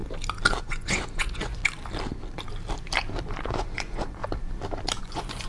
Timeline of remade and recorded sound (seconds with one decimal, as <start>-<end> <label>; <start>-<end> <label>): 0.0-0.6 recorded; 0.6-1.6 remade; 1.6-3.2 recorded; 3.2-4.2 remade; 4.2-5.0 recorded; 5.0-5.5 remade